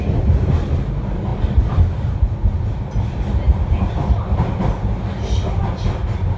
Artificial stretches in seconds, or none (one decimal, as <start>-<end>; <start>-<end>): none